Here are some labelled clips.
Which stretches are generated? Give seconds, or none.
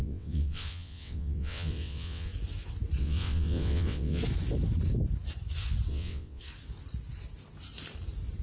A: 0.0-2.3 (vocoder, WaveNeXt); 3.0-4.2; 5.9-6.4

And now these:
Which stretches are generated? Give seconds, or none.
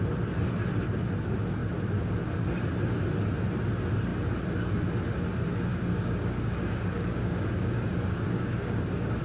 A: 5.7-9.2 (codec, DAC)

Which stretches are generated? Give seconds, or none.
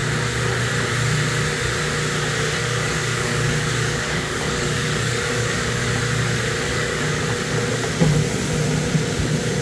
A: 2.6-5.8 (codec, DAC); 6.7-7.2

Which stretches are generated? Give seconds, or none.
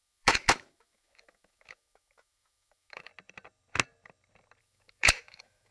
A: 0.0-3.1 (autoencoder, DAC-VAE); 4.6-5.7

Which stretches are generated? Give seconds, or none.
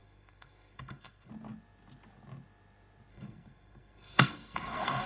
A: 0.0-1.3 (codec, SNAC); 3.1-5.1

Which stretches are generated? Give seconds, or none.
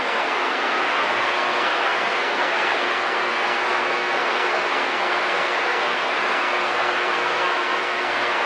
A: 0.0-8.5 (codec, SNAC)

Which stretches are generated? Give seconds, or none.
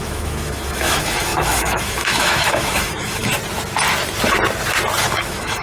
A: 0.0-3.3 (autoencoder, DAC-VAE); 5.0-5.6